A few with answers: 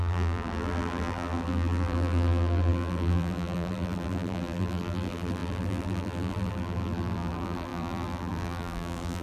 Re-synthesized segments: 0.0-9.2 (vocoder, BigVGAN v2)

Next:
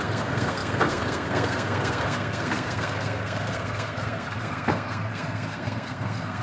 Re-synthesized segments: 0.0-6.4 (codec, SNAC)

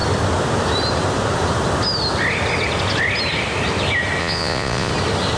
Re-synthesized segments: 4.2-4.9 (vocoder, Vocos)

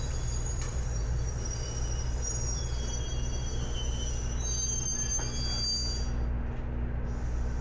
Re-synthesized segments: 0.0-2.6 (vocoder, BigVGAN v2)